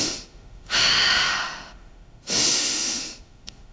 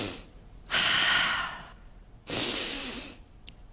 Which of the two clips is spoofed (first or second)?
first